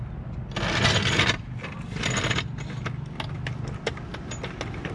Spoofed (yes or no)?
no